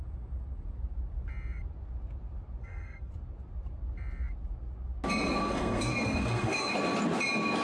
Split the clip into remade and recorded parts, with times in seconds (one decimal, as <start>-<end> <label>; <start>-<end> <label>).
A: 0.0-2.6 recorded; 2.6-3.1 remade; 3.1-5.4 recorded; 5.4-6.7 remade; 6.7-7.6 recorded